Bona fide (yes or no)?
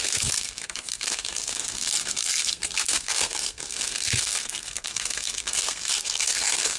no